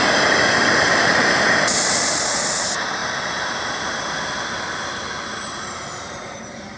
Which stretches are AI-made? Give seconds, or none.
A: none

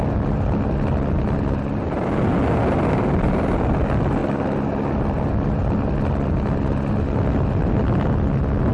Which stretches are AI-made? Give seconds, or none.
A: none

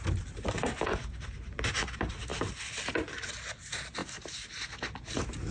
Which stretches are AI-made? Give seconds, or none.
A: none

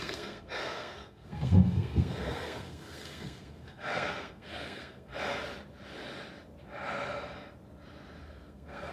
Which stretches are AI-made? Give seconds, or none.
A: 0.0-5.1 (codec, SNAC); 8.2-8.9

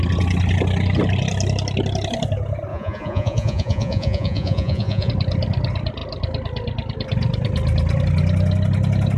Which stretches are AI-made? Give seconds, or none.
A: 2.7-5.1 (vocoder, Vocos)

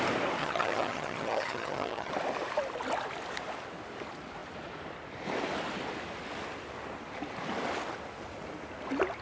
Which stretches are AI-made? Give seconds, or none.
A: 0.4-2.1 (vocoder, HiFi-GAN)

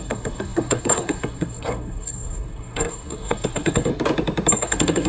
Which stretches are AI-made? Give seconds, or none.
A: 0.0-3.9 (codec, SNAC); 4.5-5.1

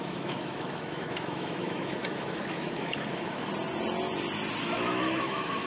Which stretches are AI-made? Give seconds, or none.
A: 0.0-3.5 (autoencoder, DAC-VAE); 4.6-5.7